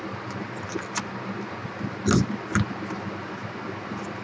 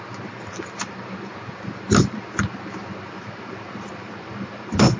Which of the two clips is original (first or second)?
first